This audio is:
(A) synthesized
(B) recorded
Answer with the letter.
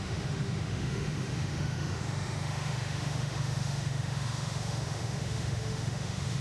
A